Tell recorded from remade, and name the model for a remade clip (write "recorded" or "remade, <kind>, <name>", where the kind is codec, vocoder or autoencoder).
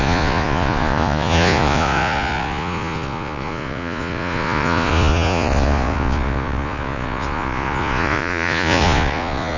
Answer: remade, vocoder, Vocos